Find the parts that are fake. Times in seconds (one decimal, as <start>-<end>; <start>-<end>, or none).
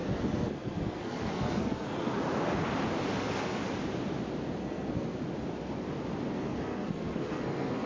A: 0.0-2.2; 3.2-3.6; 4.6-5.2; 6.3-7.9